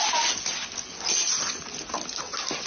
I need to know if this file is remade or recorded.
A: recorded